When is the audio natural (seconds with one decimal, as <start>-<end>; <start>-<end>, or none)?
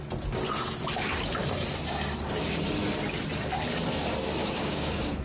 0.0-4.4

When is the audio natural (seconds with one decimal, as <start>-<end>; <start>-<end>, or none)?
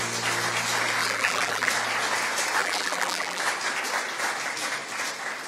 0.0-1.0; 1.7-2.6; 3.4-5.5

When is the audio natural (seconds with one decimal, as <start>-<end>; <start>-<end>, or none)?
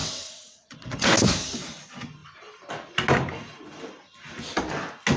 1.1-5.2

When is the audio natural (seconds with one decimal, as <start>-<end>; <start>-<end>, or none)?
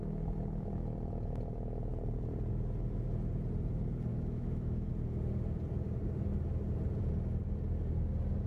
0.0-4.1; 4.9-8.5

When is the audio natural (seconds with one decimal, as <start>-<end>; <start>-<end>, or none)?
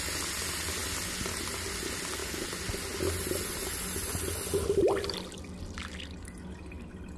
0.0-7.2